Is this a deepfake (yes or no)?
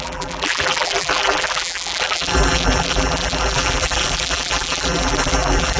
yes